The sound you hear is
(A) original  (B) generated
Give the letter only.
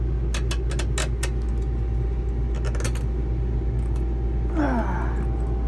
A